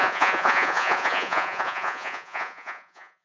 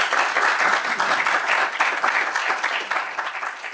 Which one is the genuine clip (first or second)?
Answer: second